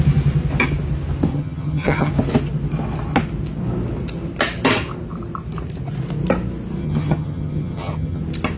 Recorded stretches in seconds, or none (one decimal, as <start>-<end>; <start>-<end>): 0.0-1.3; 2.1-6.8; 8.2-8.6

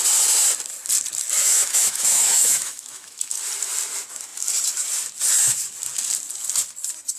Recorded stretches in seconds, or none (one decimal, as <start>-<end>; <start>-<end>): 0.0-1.4; 3.4-7.2